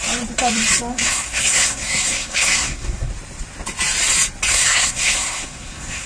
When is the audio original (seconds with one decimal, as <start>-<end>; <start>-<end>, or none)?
0.0-0.9; 3.1-4.5